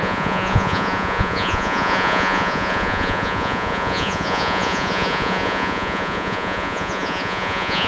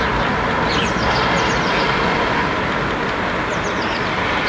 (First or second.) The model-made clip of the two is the first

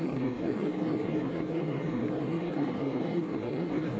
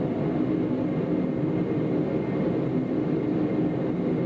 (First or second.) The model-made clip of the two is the first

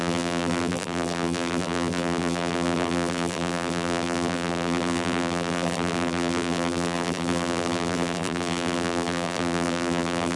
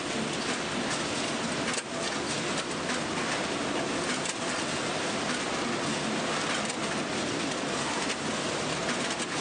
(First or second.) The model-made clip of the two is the first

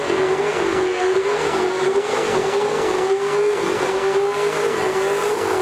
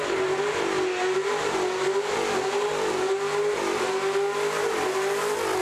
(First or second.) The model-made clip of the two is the first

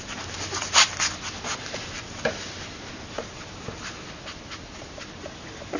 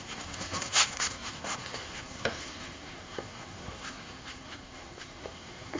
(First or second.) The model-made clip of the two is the second